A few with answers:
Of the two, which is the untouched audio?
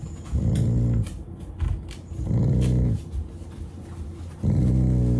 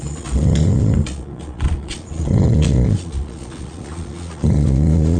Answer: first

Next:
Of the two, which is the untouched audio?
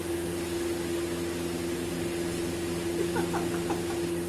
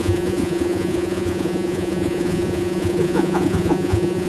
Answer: first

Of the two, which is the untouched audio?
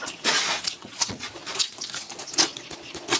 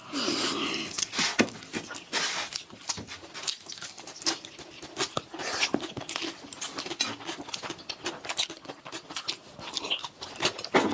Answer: second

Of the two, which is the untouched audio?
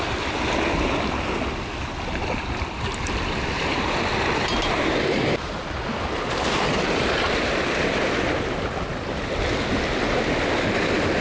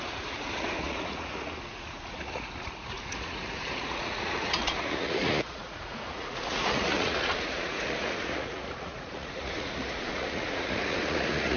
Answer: first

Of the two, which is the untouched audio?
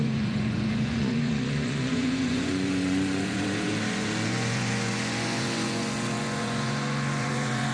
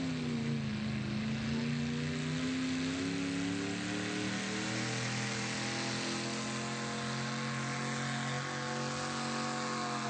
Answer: second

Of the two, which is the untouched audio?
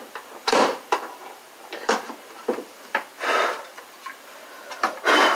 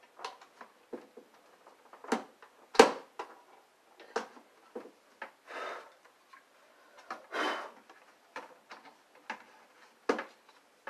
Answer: second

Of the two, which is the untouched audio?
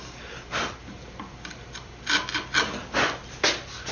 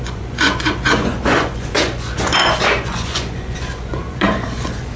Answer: first